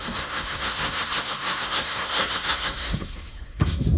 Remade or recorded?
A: remade